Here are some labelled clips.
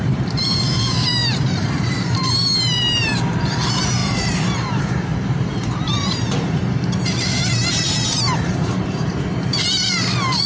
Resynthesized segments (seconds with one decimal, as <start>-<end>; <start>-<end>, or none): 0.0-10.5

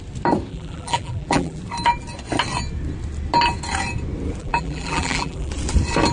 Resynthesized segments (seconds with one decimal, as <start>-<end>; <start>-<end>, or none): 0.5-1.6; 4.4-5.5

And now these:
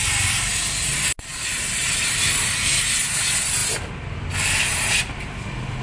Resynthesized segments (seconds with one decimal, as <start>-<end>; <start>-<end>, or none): none

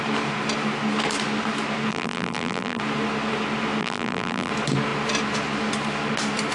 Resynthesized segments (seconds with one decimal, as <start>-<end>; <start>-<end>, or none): 1.9-2.8; 3.8-4.5

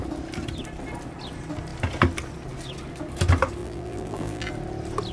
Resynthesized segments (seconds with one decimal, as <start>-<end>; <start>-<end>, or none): 3.6-4.5

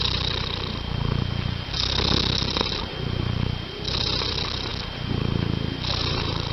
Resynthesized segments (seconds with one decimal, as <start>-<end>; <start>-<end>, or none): 0.0-6.5

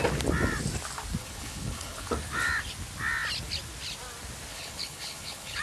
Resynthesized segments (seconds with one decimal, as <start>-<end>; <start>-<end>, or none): 1.2-2.1; 4.5-5.6

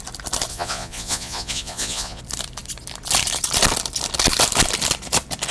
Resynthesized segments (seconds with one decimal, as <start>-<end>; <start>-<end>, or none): 0.5-2.2